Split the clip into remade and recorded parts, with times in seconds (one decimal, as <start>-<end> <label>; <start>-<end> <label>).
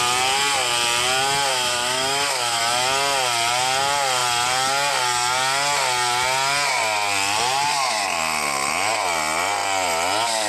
0.0-1.5 recorded; 1.5-2.6 remade; 2.6-10.5 recorded